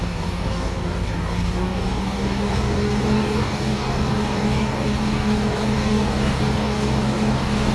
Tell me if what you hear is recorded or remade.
remade